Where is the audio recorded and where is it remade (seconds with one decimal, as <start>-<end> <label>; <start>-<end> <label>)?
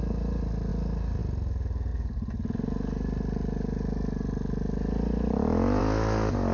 0.0-6.5 recorded